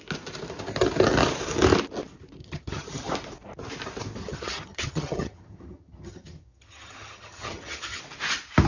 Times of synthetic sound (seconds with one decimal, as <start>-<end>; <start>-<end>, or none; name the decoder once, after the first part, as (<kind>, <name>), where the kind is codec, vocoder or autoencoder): 2.4-3.1 (vocoder, HiFi-GAN); 4.2-8.0